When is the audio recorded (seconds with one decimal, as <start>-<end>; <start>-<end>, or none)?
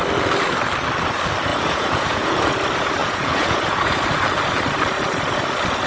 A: 0.0-1.5; 2.5-3.0; 4.0-5.9